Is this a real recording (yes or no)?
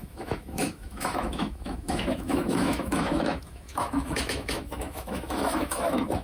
no